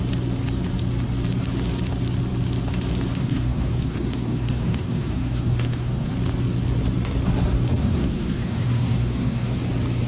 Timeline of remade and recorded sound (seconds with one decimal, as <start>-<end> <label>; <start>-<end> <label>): 0.0-3.2 recorded; 3.2-6.1 remade; 6.1-7.8 recorded; 7.8-9.6 remade; 9.6-10.1 recorded